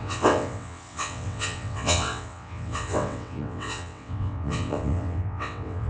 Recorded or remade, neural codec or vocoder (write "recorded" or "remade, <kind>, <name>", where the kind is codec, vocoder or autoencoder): remade, vocoder, WaveNeXt